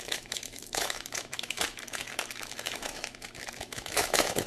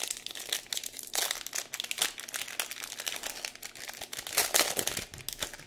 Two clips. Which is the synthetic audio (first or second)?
first